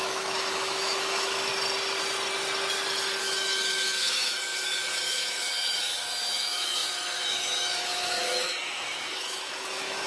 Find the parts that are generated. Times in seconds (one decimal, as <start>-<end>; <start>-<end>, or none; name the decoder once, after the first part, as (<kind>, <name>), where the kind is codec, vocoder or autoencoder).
0.0-1.5 (autoencoder, DAC-VAE); 3.2-10.1